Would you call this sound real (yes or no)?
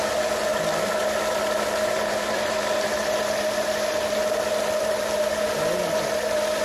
yes